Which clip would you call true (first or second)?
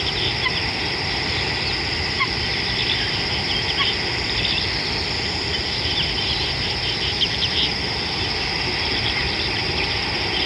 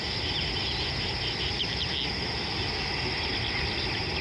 second